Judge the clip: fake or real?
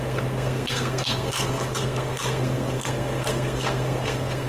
fake